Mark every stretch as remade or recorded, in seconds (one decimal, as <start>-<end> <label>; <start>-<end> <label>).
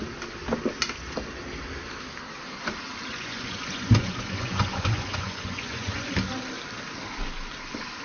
0.0-3.1 recorded; 3.1-6.1 remade; 6.1-8.0 recorded